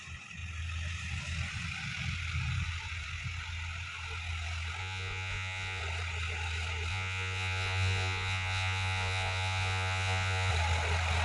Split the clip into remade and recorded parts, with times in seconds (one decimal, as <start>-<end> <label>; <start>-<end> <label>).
0.0-4.8 recorded; 4.8-5.8 remade; 5.8-6.9 recorded; 6.9-10.5 remade; 10.5-11.2 recorded